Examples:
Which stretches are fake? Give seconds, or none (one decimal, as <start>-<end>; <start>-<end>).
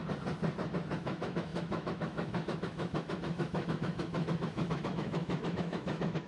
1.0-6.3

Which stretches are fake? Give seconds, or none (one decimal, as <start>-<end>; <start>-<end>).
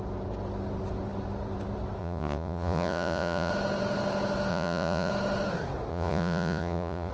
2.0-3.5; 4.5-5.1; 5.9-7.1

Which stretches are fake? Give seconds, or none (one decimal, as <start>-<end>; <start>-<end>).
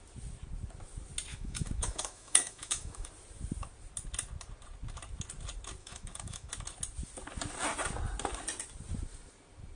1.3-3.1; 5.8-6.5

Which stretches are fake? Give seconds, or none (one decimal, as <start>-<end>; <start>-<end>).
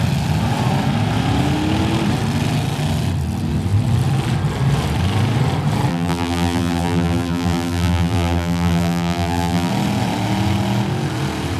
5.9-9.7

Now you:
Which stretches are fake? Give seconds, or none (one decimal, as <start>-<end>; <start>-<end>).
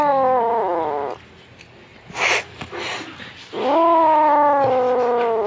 none